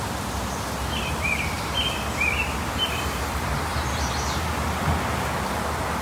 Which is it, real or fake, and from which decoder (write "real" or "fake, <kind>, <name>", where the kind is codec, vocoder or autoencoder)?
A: real